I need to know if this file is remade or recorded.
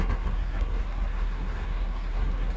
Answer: remade